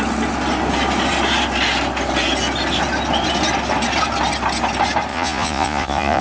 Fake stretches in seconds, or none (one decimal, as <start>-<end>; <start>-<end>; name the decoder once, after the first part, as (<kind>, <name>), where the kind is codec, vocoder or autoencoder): 5.1-6.2 (vocoder, Vocos)